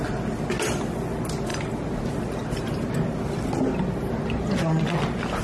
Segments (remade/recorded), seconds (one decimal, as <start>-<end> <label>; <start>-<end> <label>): 0.0-5.4 recorded